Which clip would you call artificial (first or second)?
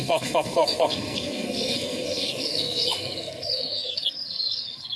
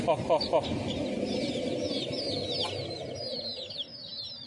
first